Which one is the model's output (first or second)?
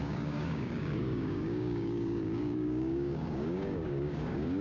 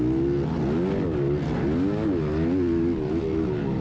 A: first